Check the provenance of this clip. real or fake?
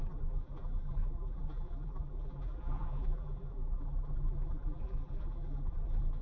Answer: fake